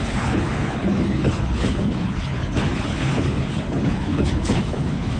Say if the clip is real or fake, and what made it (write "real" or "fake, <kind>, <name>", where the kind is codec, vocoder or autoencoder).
fake, codec, HILCodec